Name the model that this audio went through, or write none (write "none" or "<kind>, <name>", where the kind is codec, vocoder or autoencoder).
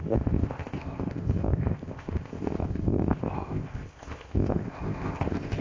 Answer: codec, ZipCodec